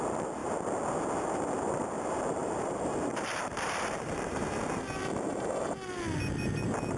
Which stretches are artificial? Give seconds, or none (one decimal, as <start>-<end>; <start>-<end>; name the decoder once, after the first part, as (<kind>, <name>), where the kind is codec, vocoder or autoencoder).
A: 2.4-4.6 (vocoder, BigVGAN v2); 5.0-5.5